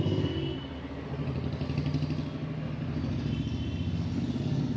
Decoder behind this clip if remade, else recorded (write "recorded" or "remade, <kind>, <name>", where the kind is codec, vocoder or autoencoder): recorded